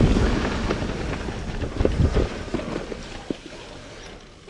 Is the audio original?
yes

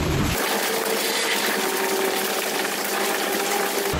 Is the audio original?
yes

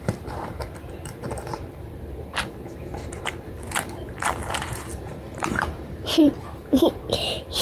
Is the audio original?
no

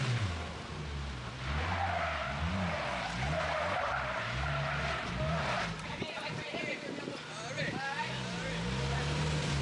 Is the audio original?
yes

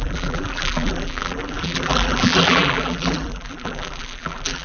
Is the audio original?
no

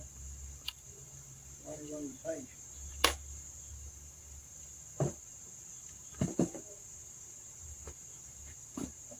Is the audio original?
no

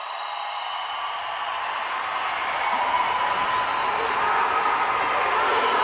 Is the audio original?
yes